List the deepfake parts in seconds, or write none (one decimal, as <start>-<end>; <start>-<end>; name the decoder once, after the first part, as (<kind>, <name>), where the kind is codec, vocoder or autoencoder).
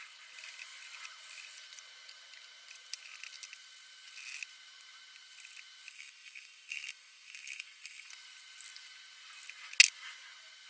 5.9-8.1 (codec, SNAC)